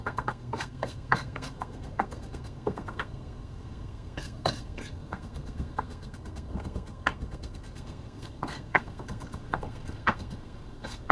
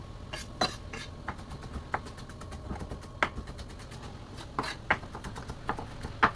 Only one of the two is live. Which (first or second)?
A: second